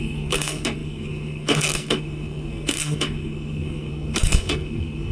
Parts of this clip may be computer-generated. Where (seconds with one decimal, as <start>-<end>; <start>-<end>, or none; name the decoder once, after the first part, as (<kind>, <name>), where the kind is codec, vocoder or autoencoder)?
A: 0.0-5.1 (codec, SNAC)